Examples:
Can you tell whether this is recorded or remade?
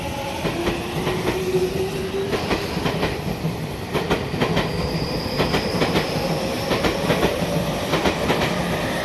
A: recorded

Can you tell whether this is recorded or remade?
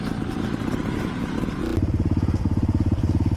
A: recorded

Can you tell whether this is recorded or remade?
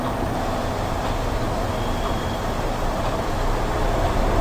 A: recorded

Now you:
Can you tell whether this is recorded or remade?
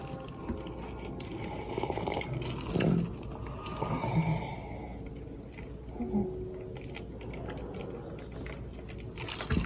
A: recorded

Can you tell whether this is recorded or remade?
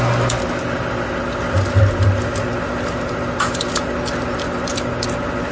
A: recorded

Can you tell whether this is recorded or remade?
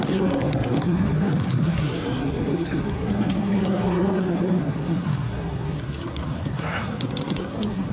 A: remade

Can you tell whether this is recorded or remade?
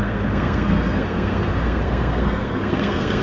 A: remade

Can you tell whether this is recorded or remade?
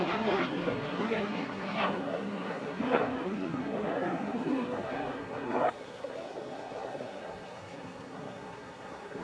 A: remade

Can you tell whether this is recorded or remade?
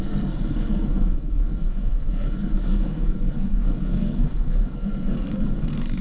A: remade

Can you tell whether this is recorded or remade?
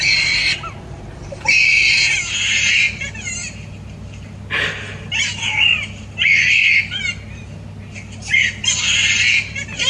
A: recorded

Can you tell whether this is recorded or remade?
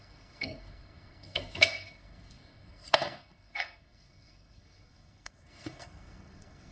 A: remade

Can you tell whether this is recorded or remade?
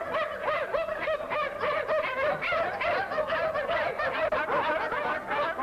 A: recorded